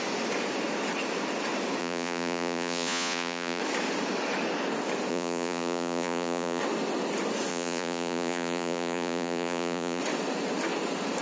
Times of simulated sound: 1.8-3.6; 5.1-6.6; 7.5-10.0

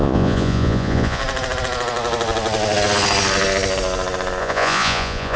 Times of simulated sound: 0.0-1.2; 4.4-5.4

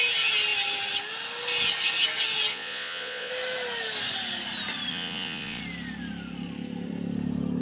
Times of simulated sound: 2.5-3.3; 4.9-5.6

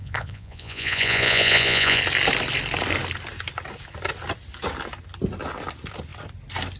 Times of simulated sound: 0.0-2.0

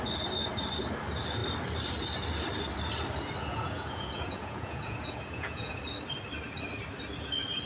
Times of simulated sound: 3.5-5.8

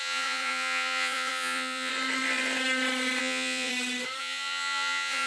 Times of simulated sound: 0.0-1.9; 3.2-3.7; 4.2-5.3

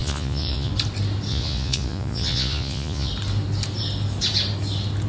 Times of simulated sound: 0.0-0.7; 1.3-3.1